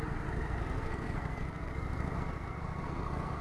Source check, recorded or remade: remade